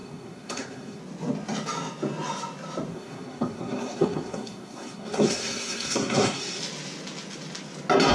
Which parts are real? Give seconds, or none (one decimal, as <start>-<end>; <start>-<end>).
1.0-2.9; 6.6-8.1